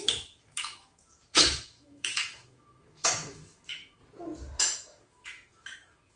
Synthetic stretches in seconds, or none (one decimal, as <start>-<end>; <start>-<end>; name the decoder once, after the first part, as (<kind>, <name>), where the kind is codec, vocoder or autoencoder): 0.0-4.0 (autoencoder, DAC-VAE); 4.6-6.2